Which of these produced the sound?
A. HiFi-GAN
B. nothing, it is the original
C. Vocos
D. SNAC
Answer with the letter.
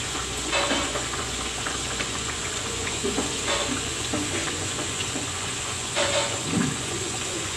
C